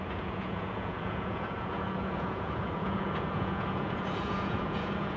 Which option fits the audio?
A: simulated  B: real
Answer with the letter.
A